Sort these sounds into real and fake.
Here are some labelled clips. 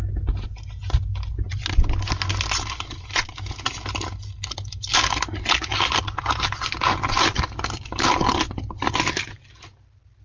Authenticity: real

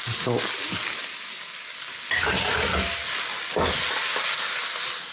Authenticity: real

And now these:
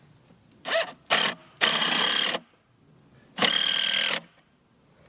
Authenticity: real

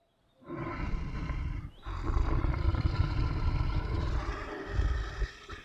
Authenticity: real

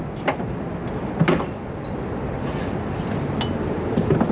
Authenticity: real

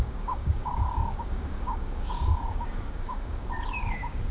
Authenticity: fake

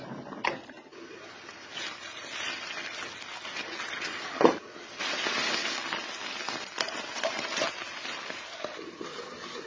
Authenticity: real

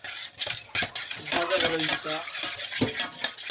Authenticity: real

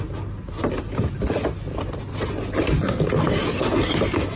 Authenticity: real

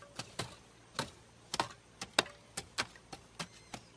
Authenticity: real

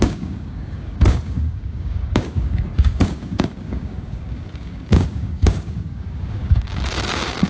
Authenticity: fake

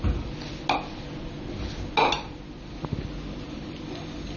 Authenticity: real